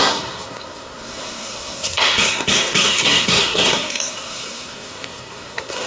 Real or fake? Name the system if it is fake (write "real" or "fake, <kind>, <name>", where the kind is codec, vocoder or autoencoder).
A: fake, codec, SNAC